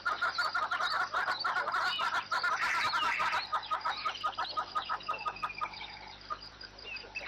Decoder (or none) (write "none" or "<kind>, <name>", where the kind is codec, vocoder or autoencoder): vocoder, BigVGAN v2